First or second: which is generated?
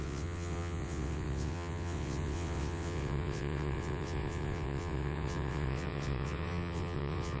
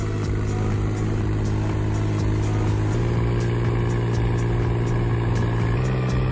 first